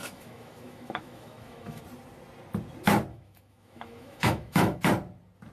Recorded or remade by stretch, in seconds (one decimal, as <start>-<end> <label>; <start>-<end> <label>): 0.0-1.8 remade; 1.8-3.1 recorded; 3.1-4.8 remade; 4.8-5.5 recorded